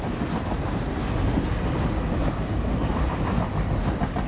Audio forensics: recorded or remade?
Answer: recorded